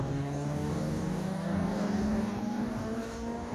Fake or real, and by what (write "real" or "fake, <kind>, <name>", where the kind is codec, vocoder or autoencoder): fake, codec, DAC